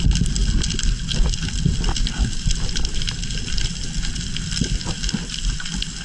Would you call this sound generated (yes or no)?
no